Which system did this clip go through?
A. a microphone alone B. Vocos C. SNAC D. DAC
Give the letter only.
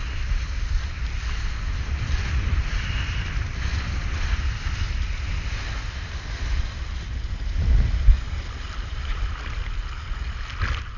A